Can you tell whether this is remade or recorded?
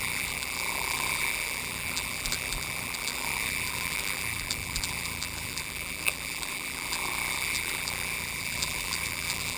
remade